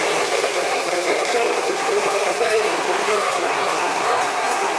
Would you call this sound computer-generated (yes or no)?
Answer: yes